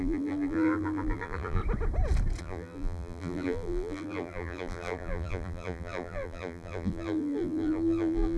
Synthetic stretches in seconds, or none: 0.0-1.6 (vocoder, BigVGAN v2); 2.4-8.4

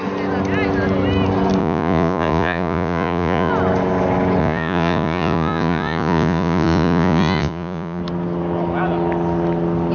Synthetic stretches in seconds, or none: 1.6-3.5 (vocoder, Vocos); 4.4-8.0

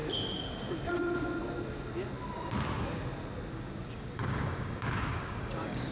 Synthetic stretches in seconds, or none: 3.5-5.9 (codec, DAC)

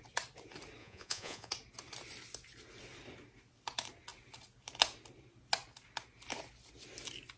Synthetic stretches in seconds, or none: 0.8-1.5 (vocoder, Vocos)

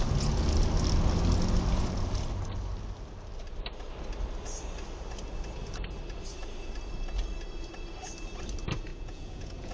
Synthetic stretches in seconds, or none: 8.9-9.7 (vocoder, Vocos)